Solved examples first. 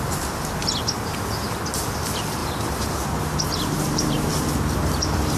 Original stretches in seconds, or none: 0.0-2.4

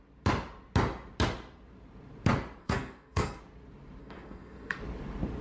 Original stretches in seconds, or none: 0.0-2.6; 3.4-4.0; 4.8-5.4

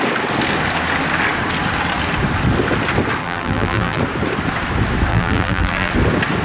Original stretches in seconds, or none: 0.0-3.2; 4.0-5.1; 5.9-6.4

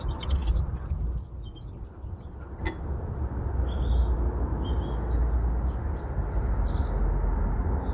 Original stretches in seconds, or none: 0.0-7.9

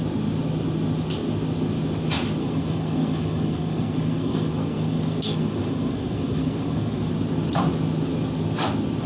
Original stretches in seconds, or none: 0.0-2.4; 7.1-9.1

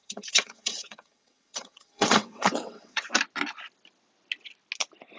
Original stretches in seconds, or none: 3.1-5.2

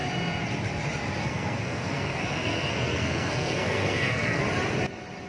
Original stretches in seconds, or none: 0.0-1.2; 4.4-5.3

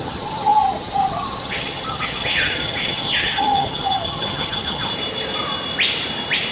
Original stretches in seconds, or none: 4.9-6.5